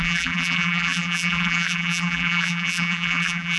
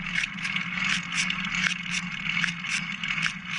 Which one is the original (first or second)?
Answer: second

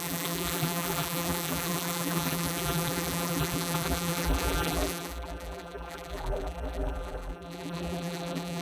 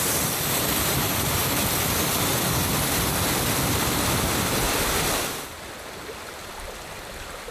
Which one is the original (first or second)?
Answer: second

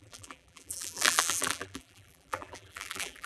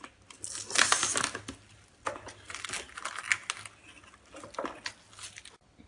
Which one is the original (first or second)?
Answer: second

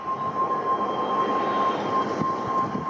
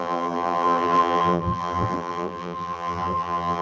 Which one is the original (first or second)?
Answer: first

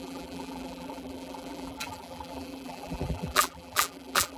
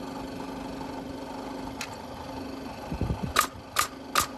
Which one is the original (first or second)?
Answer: second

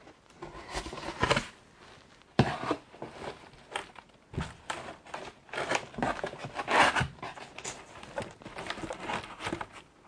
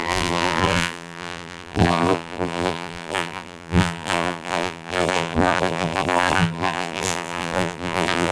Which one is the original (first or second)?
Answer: first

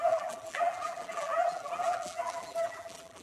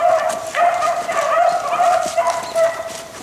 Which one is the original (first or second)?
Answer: second